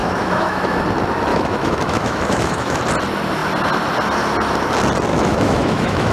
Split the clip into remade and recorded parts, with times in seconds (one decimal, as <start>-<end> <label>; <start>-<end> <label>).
0.0-0.8 remade; 0.8-1.3 recorded; 1.3-2.8 remade; 2.8-5.1 recorded; 5.1-6.1 remade